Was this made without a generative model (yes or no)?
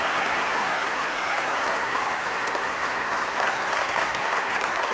no